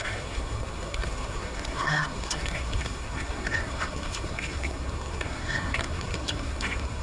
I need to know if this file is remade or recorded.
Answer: remade